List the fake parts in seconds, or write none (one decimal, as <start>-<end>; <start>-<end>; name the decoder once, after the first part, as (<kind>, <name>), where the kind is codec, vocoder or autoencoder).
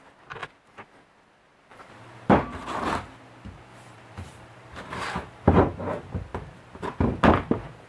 1.7-2.3 (vocoder, BigVGAN v2); 3.7-5.6; 6.3-6.8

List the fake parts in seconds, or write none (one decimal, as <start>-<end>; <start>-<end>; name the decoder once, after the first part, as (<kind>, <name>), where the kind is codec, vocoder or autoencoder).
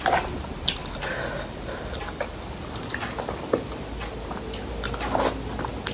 none